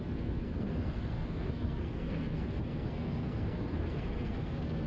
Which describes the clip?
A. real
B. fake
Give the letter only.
B